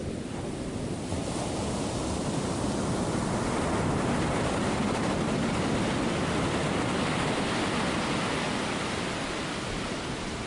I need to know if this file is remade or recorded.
recorded